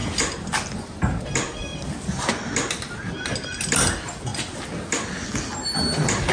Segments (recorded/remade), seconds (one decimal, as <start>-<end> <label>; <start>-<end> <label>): 0.0-6.3 recorded